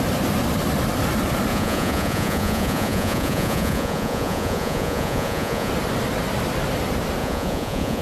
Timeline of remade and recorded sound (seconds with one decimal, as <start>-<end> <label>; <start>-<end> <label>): 0.0-1.5 recorded; 1.5-5.7 remade; 5.7-7.2 recorded; 7.2-8.0 remade

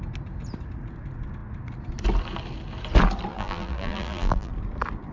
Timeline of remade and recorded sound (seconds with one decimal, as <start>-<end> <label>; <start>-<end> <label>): 0.0-3.3 recorded; 3.3-4.5 remade; 4.5-5.1 recorded